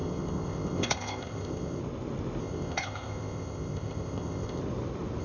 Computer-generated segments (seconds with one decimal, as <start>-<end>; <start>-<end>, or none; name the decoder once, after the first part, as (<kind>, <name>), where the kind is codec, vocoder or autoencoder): 0.0-1.8 (codec, ZipCodec); 2.4-4.6